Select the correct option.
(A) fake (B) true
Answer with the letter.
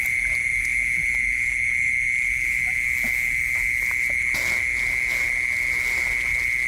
B